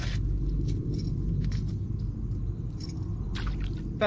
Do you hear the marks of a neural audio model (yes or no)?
no